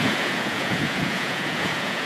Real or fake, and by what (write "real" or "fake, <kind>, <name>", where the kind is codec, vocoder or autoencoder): fake, vocoder, Vocos